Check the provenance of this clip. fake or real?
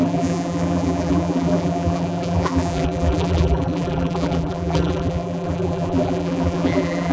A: fake